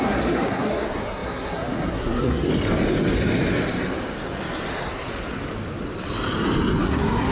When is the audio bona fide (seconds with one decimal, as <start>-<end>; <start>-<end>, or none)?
2.5-6.8

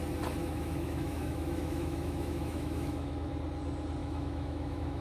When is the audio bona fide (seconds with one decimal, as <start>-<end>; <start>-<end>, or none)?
0.0-0.4; 3.3-4.0

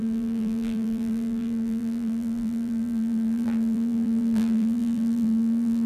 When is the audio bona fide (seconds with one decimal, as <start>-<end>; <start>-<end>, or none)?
none

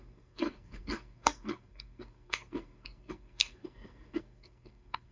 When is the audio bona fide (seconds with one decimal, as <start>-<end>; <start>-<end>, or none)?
none